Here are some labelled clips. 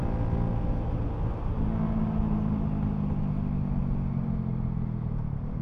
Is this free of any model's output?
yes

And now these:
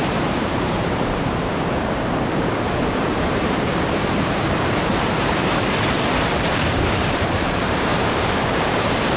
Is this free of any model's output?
no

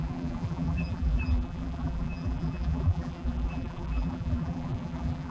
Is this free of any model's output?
no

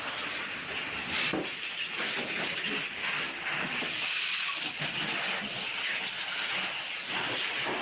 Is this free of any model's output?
yes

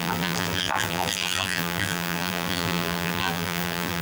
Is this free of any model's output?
no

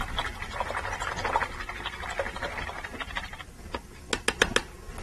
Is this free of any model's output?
yes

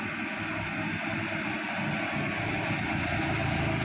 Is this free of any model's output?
yes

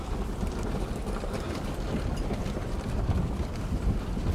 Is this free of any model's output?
no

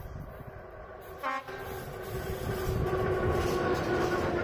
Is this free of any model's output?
yes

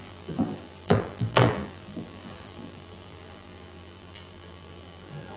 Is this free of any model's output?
no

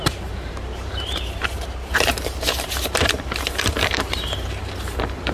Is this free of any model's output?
no